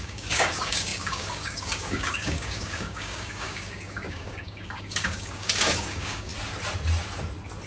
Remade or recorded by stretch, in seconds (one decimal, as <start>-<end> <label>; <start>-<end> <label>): 0.0-6.3 remade; 6.3-7.7 recorded